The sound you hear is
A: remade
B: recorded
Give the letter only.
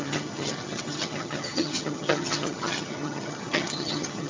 A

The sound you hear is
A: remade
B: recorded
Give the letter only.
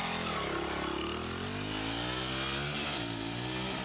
B